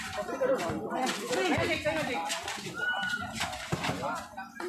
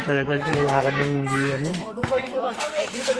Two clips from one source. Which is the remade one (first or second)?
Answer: second